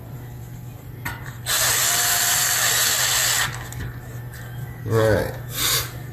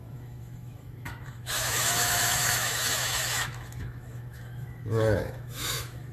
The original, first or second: first